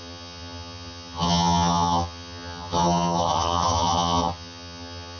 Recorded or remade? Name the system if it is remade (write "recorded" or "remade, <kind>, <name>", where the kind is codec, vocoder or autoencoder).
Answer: remade, vocoder, HiFi-GAN